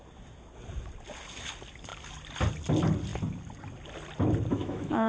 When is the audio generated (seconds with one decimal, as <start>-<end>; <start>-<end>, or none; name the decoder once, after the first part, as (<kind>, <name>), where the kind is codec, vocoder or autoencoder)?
4.5-5.1 (autoencoder, DAC-VAE)